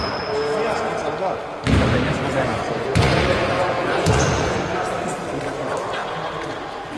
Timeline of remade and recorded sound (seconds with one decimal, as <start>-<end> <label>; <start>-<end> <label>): 0.0-2.5 recorded; 2.5-4.6 remade; 4.6-7.0 recorded